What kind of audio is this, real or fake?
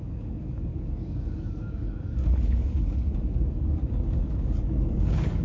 fake